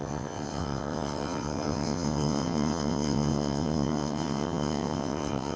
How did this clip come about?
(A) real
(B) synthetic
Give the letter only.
B